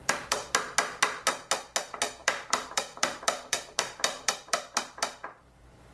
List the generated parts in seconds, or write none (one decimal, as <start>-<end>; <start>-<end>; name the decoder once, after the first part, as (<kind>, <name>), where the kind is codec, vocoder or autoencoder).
0.0-0.5 (vocoder, BigVGAN v2); 2.2-5.9